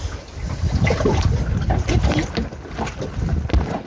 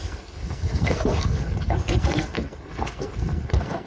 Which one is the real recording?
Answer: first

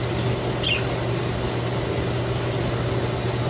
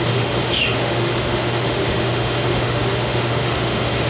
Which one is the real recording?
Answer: first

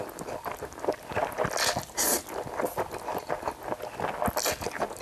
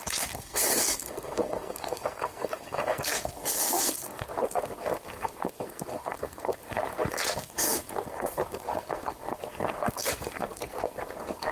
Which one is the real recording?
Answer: first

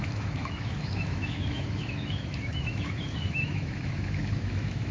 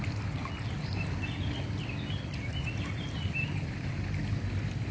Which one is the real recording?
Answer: second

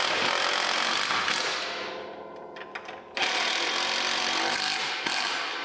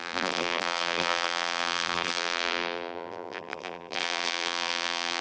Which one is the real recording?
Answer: first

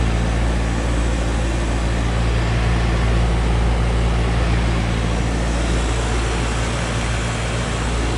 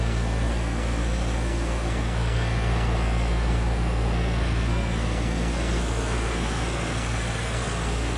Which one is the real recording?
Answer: first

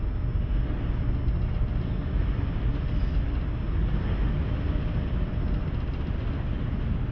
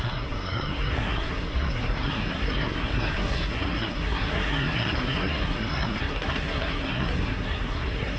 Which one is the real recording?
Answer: first